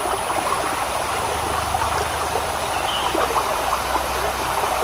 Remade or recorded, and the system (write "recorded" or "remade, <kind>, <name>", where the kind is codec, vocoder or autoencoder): recorded